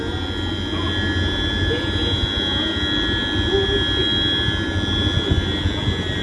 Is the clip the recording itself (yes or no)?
yes